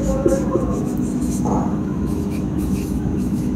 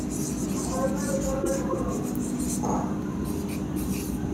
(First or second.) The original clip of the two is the second